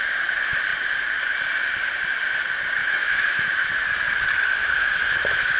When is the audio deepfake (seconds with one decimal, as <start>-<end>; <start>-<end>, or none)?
2.8-3.7; 4.6-5.6